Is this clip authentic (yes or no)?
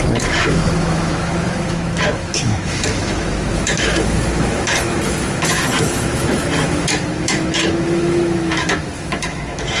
no